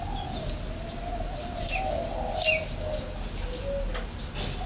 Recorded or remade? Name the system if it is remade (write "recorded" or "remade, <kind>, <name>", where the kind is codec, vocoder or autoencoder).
recorded